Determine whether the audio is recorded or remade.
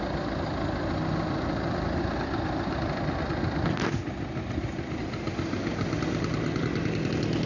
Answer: recorded